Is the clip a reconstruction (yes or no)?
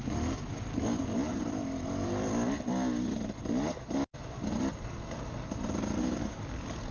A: no